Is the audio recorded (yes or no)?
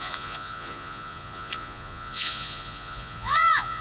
no